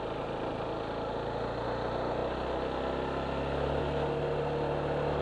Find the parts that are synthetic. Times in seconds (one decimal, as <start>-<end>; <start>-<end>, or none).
none